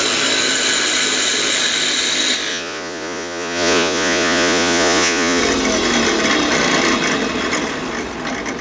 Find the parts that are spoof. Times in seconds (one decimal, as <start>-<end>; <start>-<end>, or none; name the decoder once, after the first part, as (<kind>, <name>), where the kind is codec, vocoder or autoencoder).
2.5-5.4 (vocoder, Vocos)